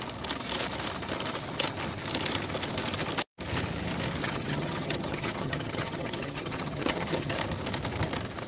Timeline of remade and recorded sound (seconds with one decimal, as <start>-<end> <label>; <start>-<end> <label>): 0.0-4.2 recorded; 4.2-7.4 remade; 7.4-8.5 recorded